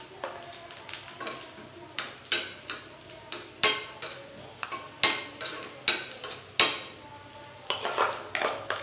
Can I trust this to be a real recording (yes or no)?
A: yes